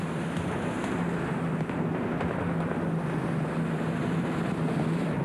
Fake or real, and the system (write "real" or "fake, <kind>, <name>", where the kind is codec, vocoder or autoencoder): real